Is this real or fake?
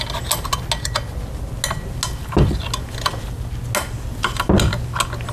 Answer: real